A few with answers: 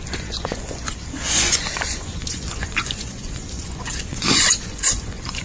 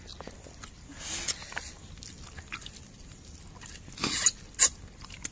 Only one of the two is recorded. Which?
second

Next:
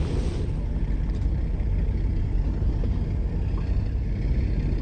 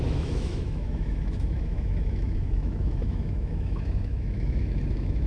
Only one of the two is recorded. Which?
first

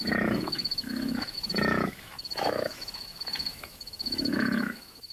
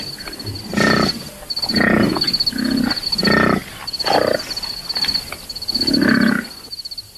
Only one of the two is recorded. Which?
second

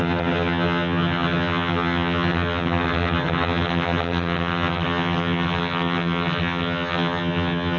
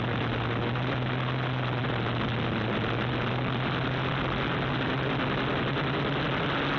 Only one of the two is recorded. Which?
second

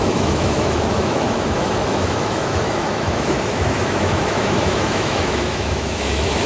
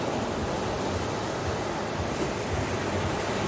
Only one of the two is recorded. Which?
second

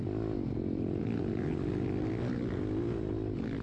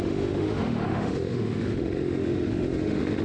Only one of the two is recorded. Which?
first